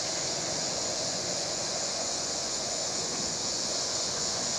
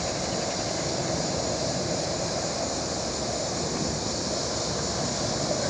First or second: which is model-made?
first